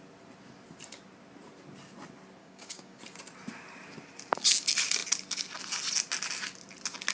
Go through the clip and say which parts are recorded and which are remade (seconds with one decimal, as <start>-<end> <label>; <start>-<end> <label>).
0.0-2.4 recorded; 2.4-3.0 remade; 3.0-7.1 recorded